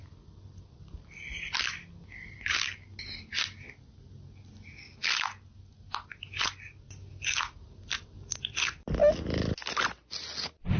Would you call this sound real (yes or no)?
yes